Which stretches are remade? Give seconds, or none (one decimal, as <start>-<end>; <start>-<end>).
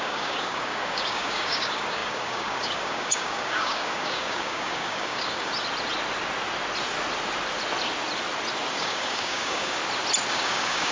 0.0-5.5; 8.7-9.8; 10.3-10.9